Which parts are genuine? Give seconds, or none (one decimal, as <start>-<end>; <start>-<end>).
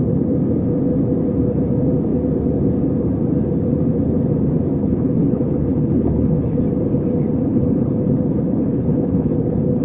0.0-4.8; 6.6-7.5